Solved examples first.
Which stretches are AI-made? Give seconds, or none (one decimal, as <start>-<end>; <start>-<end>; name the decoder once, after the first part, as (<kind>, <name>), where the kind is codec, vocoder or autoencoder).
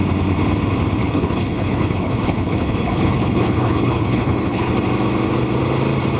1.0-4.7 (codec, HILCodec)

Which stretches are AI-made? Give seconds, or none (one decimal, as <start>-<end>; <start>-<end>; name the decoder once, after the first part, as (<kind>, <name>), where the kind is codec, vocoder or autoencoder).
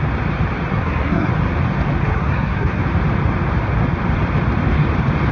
0.7-1.3 (codec, SNAC); 2.0-2.8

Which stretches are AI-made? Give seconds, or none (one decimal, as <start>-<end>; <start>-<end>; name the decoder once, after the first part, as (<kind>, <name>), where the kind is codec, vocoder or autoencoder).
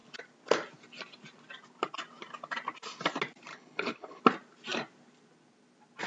3.5-4.2 (codec, HILCodec)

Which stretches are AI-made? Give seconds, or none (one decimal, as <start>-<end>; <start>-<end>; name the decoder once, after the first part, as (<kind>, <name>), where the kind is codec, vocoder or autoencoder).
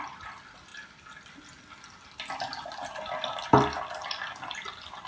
none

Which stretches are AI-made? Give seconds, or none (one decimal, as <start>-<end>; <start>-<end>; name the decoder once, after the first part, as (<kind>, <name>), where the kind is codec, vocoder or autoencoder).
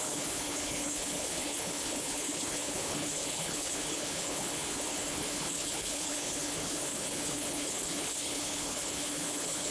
0.0-9.7 (codec, HILCodec)